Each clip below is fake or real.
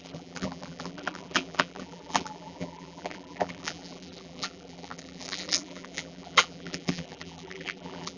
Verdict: fake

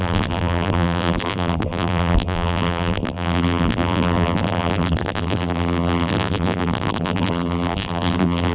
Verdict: fake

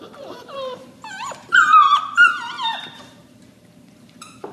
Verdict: fake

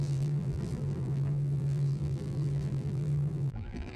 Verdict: fake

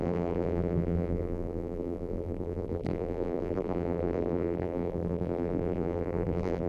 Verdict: fake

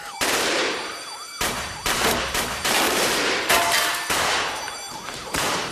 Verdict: fake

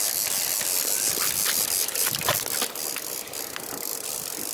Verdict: real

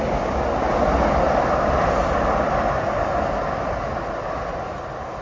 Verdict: real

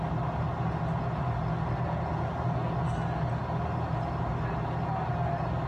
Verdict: real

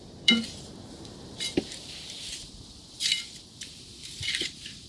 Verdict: fake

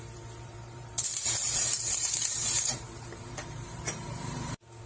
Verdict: fake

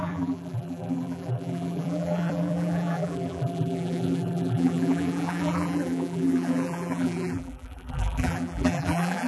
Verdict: fake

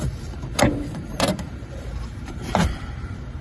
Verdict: fake